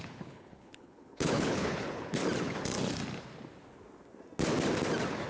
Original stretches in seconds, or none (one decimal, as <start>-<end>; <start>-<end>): 2.2-5.3